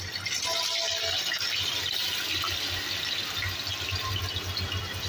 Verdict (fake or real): real